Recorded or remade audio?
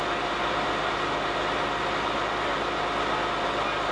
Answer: recorded